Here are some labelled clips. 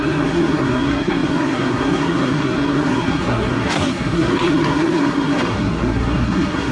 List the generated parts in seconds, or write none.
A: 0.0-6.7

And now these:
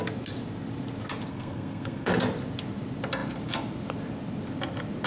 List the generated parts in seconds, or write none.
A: 1.3-2.1

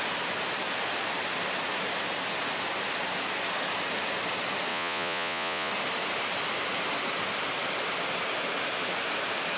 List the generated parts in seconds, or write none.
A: 4.7-5.7